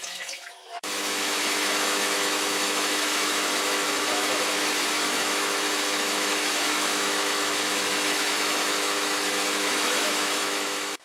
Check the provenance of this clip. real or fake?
fake